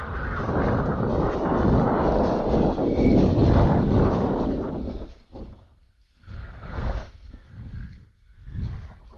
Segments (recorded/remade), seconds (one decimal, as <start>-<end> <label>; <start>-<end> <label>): 0.0-4.8 recorded; 4.8-8.7 remade; 8.7-9.2 recorded